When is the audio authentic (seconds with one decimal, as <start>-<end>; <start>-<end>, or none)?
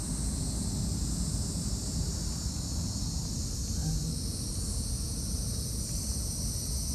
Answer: 0.0-3.8; 4.3-6.9